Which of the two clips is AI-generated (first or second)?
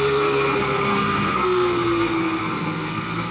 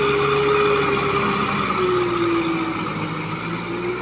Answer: first